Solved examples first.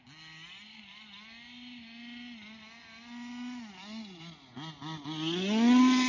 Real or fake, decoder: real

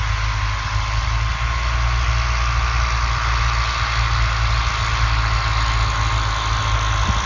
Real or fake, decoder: real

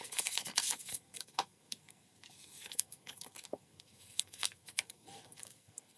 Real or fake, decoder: fake, codec, SNAC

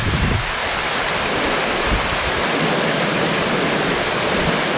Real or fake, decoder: real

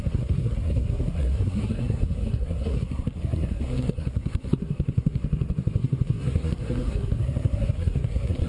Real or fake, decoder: fake, codec, SNAC